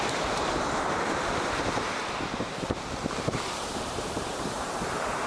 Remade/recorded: remade